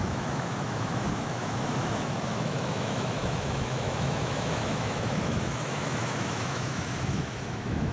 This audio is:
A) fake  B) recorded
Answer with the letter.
A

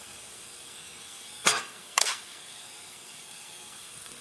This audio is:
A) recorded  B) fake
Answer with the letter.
B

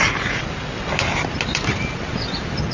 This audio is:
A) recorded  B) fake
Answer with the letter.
A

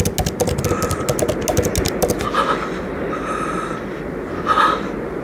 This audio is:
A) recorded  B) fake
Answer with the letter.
A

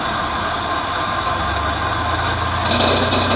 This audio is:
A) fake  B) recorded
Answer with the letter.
B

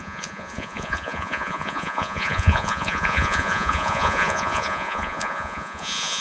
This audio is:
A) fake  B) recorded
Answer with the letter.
A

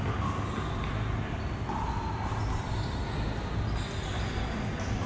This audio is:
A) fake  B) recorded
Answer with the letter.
B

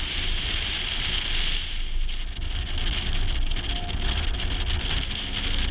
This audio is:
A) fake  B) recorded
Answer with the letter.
B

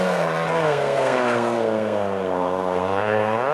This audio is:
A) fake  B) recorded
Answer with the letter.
A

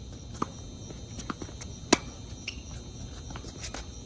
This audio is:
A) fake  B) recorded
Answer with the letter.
B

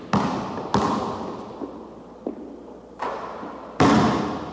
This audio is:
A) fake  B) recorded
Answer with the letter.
B